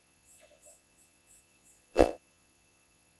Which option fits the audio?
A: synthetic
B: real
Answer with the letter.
A